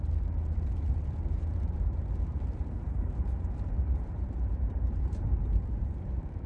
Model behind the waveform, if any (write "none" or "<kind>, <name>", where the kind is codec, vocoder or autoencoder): vocoder, BigVGAN v2